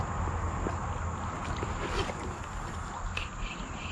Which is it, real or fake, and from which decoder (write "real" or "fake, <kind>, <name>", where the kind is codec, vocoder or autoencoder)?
real